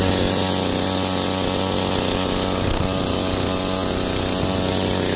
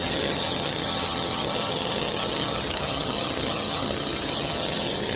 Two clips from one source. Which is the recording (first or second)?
first